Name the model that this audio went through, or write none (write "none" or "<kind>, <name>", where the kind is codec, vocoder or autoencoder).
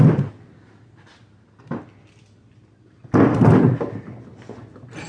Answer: none